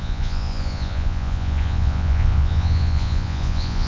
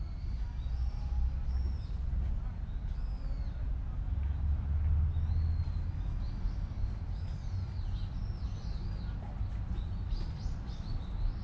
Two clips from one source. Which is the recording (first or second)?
second